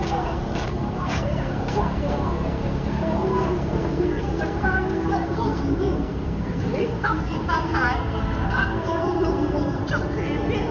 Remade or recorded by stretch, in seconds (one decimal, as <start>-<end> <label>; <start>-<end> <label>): 0.0-9.8 remade; 9.8-10.7 recorded